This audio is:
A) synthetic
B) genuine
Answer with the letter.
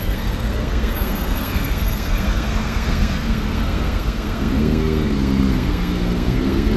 A